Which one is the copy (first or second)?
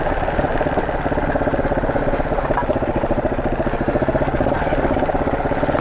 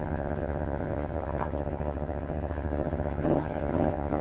second